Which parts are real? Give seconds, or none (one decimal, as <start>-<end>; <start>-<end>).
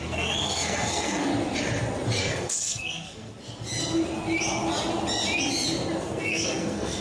1.3-2.2; 3.3-6.0